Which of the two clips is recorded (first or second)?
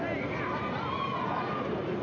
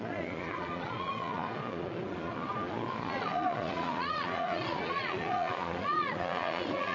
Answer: first